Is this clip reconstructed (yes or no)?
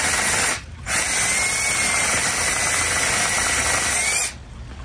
no